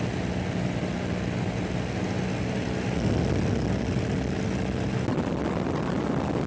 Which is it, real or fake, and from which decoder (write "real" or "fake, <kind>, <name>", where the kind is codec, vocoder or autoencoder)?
real